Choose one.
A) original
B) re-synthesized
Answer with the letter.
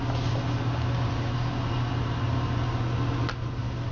A